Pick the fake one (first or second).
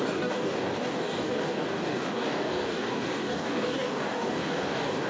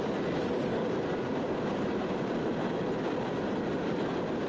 first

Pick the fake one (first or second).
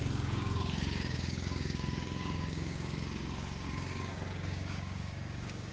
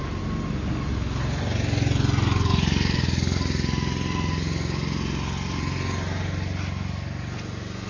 first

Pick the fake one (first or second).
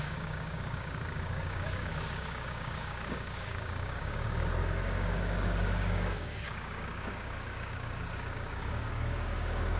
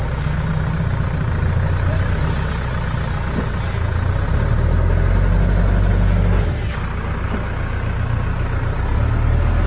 first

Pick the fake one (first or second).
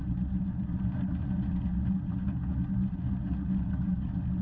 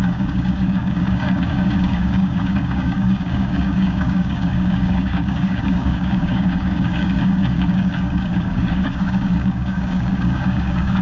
second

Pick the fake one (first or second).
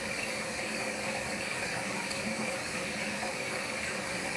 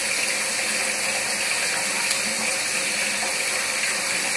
first